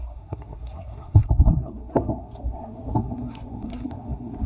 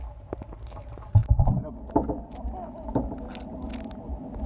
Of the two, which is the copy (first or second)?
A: first